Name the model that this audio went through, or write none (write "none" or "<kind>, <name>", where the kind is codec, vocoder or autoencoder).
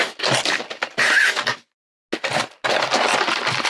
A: none